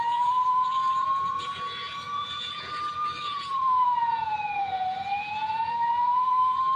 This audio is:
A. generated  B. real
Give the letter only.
A